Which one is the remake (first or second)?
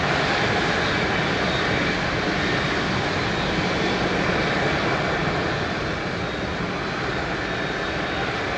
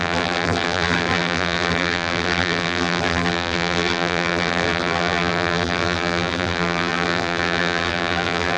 second